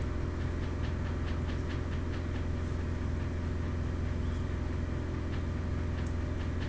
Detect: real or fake real